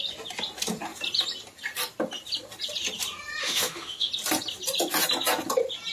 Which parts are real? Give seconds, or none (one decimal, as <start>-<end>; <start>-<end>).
0.0-3.4; 4.1-5.9